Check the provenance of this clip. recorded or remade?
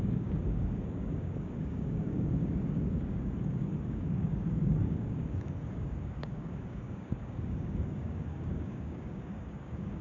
remade